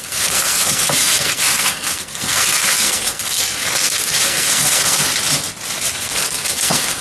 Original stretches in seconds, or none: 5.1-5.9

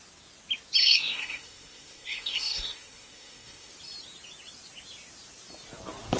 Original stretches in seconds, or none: 0.0-0.8; 3.7-6.2

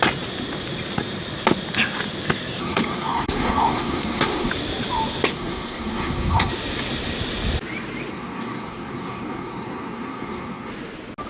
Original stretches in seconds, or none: 0.0-2.6; 4.5-5.3; 6.5-8.1; 10.7-11.3

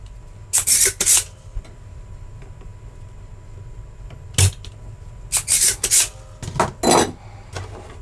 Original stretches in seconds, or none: 0.0-8.0

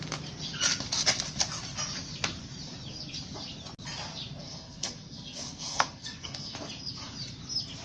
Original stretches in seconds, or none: 0.0-4.4; 6.7-7.8